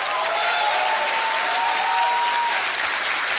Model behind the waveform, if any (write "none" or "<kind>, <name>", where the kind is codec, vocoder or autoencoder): none